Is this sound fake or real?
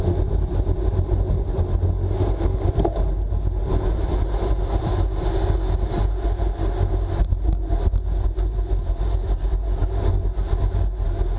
real